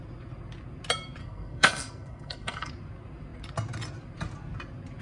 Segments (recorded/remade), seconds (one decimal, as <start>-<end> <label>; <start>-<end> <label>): 0.0-1.2 recorded; 1.2-2.7 remade; 2.7-5.0 recorded